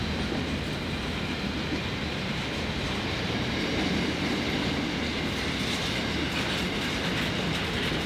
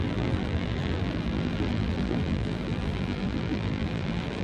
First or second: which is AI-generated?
second